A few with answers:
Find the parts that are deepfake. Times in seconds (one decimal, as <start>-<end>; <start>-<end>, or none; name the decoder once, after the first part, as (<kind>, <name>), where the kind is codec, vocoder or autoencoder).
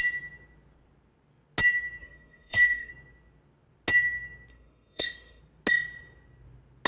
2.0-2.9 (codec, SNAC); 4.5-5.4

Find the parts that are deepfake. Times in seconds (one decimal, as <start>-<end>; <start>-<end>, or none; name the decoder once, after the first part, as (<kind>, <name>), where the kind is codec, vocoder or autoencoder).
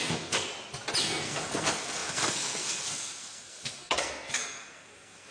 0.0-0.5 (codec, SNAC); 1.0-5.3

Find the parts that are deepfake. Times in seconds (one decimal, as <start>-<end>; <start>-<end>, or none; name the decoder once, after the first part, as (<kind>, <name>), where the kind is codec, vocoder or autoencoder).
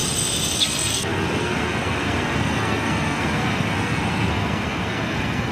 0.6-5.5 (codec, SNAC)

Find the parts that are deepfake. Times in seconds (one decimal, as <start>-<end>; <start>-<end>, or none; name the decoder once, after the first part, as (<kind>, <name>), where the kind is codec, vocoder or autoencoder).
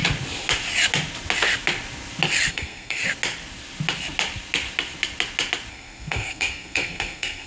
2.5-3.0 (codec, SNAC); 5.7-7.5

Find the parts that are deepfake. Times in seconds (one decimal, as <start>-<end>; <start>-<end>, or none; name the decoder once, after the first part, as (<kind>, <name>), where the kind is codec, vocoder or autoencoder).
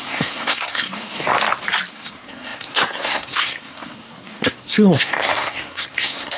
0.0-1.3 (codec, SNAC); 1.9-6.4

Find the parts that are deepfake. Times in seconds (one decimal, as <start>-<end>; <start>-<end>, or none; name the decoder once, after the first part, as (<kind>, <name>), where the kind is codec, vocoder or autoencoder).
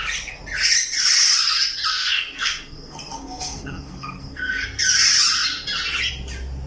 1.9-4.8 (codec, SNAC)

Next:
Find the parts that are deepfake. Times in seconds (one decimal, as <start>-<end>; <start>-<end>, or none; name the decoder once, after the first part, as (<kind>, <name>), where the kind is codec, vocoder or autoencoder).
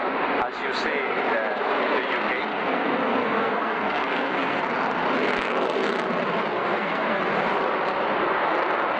2.5-4.6 (codec, SNAC); 6.6-7.2